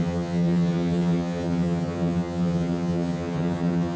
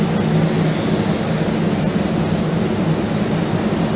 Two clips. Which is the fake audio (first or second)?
first